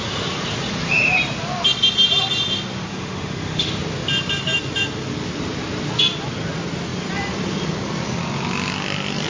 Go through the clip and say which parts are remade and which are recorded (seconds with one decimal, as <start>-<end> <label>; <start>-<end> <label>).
0.0-2.9 recorded; 2.9-3.8 remade; 3.8-9.3 recorded